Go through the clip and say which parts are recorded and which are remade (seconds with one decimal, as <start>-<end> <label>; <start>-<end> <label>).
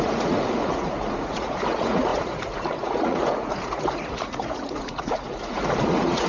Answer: 0.0-6.3 remade